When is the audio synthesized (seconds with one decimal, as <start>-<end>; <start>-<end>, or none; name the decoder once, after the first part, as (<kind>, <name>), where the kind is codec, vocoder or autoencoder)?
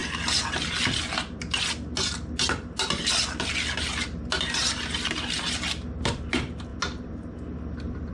none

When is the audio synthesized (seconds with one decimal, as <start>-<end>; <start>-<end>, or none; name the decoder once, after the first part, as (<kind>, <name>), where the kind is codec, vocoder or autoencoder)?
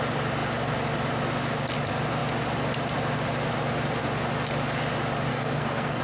5.3-6.0 (codec, SNAC)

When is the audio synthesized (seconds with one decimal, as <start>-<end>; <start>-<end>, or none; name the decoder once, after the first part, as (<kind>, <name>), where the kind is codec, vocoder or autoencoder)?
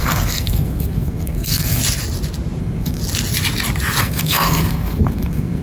0.0-1.8 (codec, SNAC); 2.6-3.0; 4.0-5.6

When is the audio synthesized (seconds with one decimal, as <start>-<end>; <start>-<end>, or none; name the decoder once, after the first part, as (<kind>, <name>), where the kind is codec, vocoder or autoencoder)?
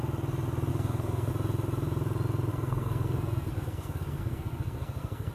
0.7-1.3 (codec, SNAC); 2.5-5.3